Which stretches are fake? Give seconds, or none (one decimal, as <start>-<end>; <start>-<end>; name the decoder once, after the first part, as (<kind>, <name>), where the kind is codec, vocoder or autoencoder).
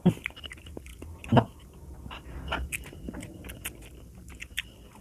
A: none